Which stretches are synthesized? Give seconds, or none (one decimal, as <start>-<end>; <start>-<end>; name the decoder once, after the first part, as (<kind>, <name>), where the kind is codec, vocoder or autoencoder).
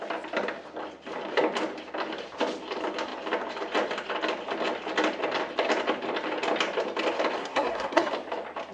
7.4-8.1 (codec, SNAC)